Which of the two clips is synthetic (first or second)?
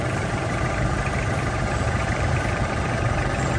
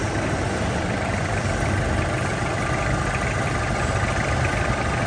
first